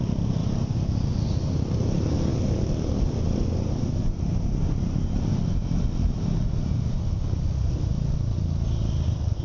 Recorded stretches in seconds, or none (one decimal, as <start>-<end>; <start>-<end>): 0.0-0.4; 1.1-9.4